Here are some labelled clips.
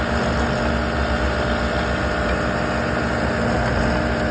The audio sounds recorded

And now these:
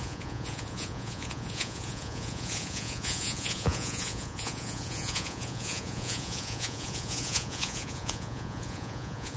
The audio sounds remade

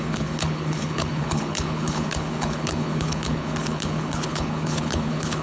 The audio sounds remade